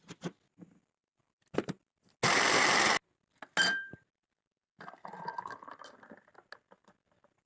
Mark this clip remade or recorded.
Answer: recorded